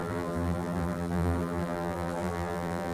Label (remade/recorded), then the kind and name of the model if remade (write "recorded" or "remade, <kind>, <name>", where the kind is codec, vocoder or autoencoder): remade, vocoder, BigVGAN v2